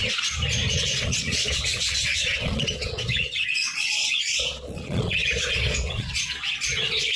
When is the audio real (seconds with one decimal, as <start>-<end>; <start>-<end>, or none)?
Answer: 0.0-0.7